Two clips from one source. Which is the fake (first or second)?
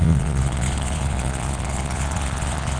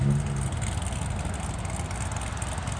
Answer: first